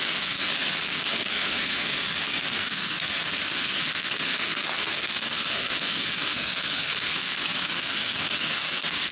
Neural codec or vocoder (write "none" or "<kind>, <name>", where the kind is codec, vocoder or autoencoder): codec, SNAC